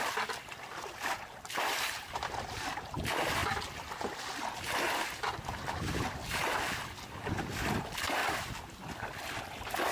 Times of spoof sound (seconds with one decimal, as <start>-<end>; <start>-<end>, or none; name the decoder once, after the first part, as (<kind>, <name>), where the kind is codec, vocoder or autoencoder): 0.0-3.4 (vocoder, BigVGAN v2); 7.4-8.2; 9.4-9.9

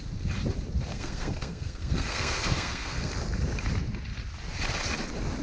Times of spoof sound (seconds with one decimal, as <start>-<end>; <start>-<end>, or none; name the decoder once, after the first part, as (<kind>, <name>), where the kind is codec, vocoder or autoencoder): 0.9-3.1 (codec, SNAC)

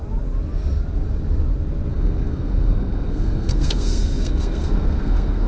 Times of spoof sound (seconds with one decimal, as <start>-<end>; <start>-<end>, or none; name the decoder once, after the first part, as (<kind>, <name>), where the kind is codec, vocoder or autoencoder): 1.9-5.5 (codec, SNAC)

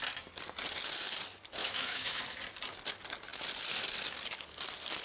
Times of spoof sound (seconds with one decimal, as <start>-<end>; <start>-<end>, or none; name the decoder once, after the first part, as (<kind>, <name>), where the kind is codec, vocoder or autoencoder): 1.6-2.2 (autoencoder, DAC-VAE)

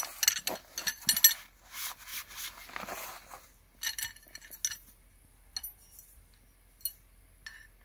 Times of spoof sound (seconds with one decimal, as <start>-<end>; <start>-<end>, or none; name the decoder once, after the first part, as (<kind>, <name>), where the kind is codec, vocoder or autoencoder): none

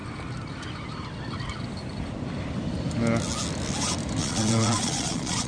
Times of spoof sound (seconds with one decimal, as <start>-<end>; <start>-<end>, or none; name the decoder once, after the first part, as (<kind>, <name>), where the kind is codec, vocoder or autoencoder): 4.2-5.5 (vocoder, Vocos)

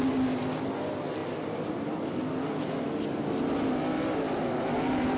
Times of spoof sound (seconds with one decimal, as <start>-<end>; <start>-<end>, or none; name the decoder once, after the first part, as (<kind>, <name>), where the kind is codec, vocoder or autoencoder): none